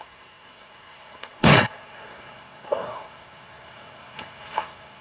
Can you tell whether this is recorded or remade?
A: remade